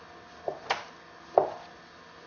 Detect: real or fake real